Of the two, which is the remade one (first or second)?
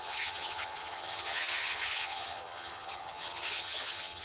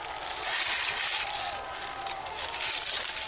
first